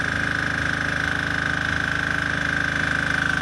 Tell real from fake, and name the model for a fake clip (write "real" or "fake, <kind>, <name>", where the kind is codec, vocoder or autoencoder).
real